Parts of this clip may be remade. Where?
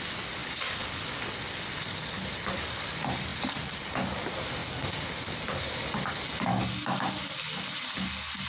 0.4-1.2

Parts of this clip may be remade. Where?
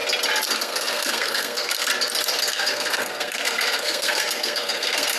0.6-1.9; 2.5-5.2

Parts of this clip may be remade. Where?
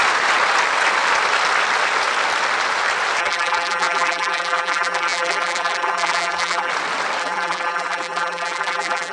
3.2-6.7; 7.2-9.1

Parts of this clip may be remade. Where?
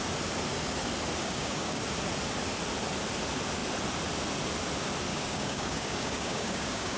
1.2-1.8; 5.1-7.0